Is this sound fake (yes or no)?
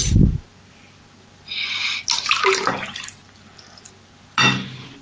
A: no